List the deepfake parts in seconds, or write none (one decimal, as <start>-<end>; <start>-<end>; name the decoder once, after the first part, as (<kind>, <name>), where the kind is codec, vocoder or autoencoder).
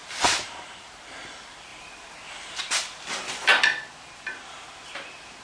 none